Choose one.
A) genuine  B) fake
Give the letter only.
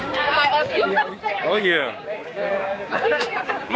B